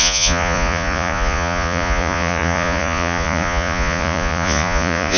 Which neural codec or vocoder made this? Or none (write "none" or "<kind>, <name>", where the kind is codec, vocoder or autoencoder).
vocoder, Vocos